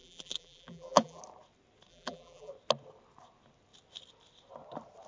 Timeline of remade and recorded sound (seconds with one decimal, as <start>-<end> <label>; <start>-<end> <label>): 0.0-1.2 remade; 1.2-1.9 recorded; 1.9-2.5 remade; 2.5-5.1 recorded